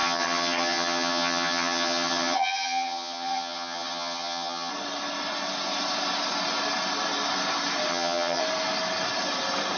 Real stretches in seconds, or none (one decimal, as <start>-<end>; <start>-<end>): 4.7-7.9; 8.4-9.8

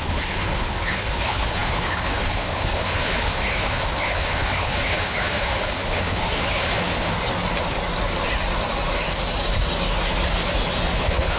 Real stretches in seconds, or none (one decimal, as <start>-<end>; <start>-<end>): 7.1-10.9

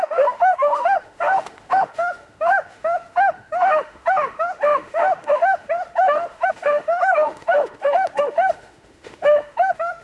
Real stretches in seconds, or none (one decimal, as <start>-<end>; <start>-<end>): none

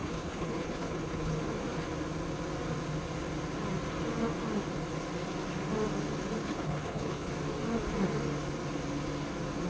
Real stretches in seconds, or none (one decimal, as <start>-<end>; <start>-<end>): 1.3-6.4; 7.3-9.7

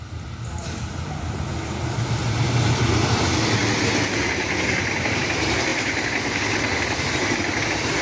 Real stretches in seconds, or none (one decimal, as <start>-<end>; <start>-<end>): 0.0-2.2; 2.8-5.7; 6.4-8.0

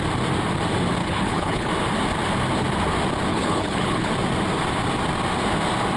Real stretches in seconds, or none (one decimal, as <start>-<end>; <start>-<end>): 0.0-1.0; 1.7-3.3; 4.1-6.0

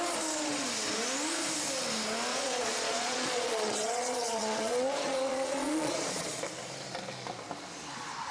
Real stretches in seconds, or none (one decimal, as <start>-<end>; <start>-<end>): 0.0-2.3; 6.4-8.3